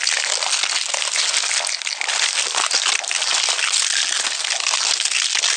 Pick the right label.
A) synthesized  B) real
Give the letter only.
B